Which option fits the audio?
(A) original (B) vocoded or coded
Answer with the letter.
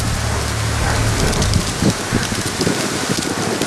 A